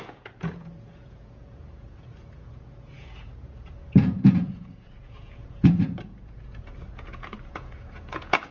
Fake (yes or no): yes